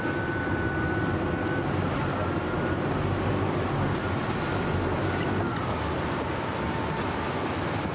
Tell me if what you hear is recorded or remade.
recorded